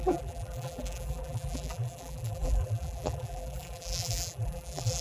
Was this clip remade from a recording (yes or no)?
yes